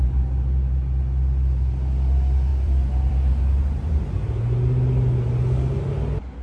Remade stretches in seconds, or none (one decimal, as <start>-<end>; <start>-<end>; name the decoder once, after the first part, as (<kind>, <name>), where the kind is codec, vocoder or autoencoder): 2.5-3.1 (vocoder, BigVGAN v2)